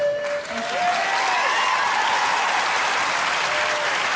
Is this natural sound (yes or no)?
yes